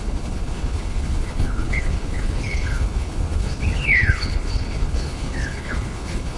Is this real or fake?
fake